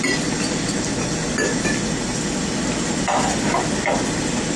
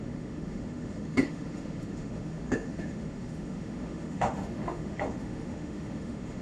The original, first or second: first